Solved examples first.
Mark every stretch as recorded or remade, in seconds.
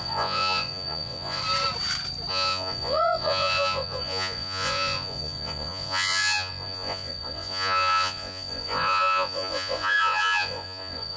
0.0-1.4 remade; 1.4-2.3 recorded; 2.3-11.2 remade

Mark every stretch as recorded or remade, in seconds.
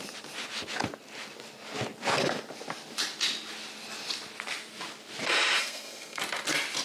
0.0-5.6 recorded; 5.6-6.2 remade; 6.2-6.8 recorded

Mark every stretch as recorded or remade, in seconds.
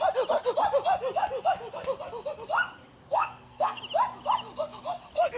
0.0-3.1 recorded; 3.1-3.8 remade; 3.8-5.4 recorded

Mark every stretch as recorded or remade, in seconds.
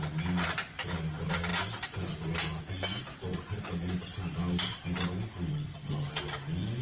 0.0-5.5 recorded; 5.5-6.1 remade; 6.1-6.8 recorded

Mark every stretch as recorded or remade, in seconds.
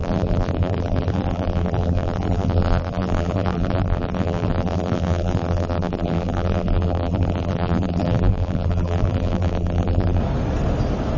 0.0-10.2 remade; 10.2-11.2 recorded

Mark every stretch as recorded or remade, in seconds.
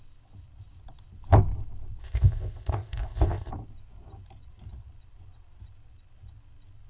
0.0-2.0 recorded; 2.0-3.5 remade; 3.5-6.9 recorded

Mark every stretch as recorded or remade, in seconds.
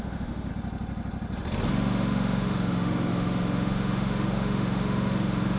0.0-0.5 remade; 0.5-1.7 recorded; 1.7-5.6 remade